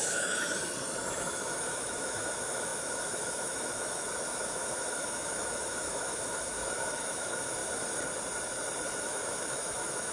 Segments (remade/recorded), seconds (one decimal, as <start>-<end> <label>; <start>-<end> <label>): 0.0-0.6 remade; 0.6-1.1 recorded; 1.1-7.6 remade; 7.6-8.9 recorded; 8.9-10.1 remade